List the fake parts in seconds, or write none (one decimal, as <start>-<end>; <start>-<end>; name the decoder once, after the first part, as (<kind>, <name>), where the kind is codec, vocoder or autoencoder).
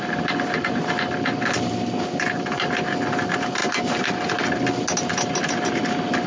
none